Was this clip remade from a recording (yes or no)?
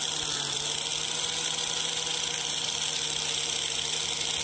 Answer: no